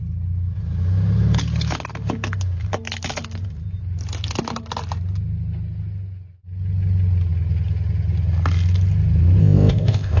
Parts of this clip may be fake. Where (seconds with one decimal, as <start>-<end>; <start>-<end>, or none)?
9.4-10.2